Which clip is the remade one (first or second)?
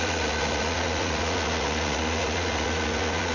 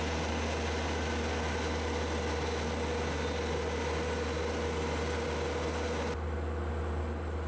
first